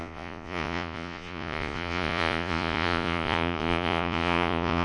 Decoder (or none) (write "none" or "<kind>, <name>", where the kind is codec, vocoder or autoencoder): vocoder, Vocos